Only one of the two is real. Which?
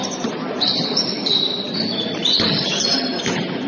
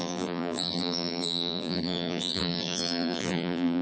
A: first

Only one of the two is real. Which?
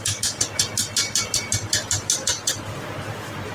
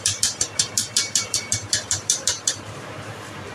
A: first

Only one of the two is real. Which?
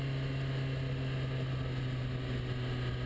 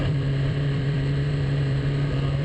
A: first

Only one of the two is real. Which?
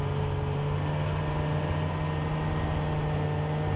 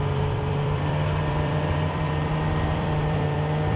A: first